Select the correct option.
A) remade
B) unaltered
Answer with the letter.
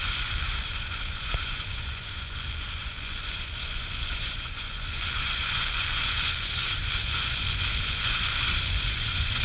A